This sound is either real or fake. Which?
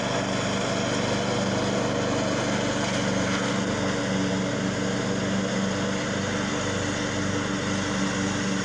real